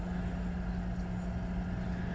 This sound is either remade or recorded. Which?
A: recorded